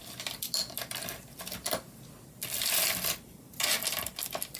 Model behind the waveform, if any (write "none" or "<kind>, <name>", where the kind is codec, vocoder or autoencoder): none